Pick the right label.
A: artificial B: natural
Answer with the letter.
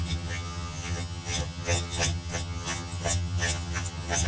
A